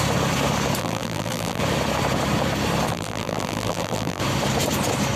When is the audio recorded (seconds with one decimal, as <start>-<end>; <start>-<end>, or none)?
0.0-0.8; 1.6-2.9; 4.2-5.2